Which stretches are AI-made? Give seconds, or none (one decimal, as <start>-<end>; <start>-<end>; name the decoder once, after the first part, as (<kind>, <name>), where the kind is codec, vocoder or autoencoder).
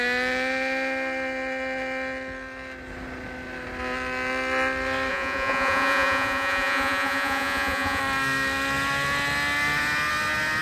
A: 5.1-8.0 (vocoder, Vocos)